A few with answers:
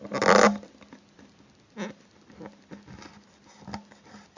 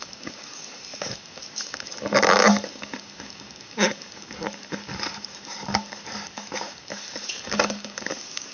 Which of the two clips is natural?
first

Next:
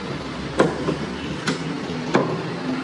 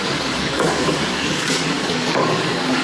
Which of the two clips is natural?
first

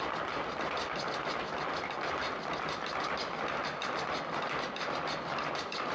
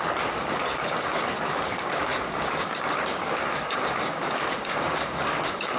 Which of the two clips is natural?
first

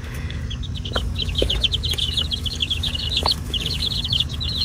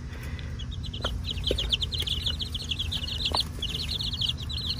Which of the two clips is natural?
second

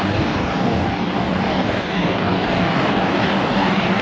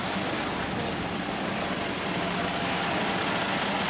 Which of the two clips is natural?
second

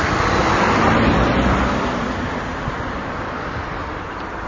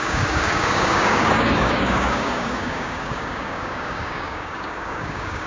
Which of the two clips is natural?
first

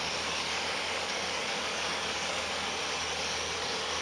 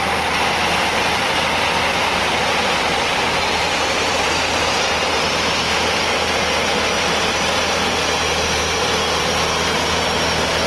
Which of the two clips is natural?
second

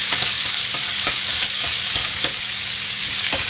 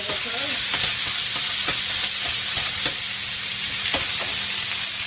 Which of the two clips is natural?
second